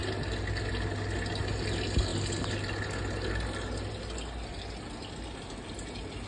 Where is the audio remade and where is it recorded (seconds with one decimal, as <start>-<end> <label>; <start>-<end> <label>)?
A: 0.0-6.3 recorded